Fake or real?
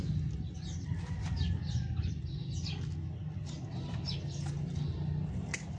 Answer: real